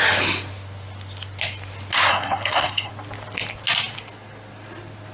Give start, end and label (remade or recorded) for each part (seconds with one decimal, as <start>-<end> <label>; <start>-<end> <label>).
0.0-2.1 recorded; 2.1-2.9 remade; 2.9-5.1 recorded